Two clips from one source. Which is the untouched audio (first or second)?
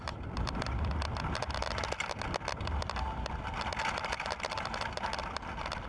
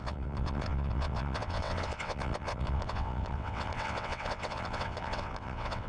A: first